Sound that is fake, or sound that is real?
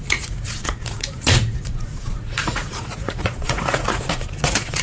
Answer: fake